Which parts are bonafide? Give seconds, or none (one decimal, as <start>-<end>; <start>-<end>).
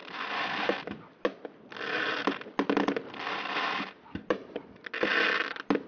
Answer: 0.0-5.9